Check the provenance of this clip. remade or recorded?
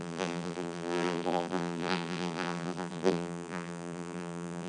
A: remade